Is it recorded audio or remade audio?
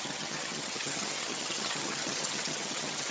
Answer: remade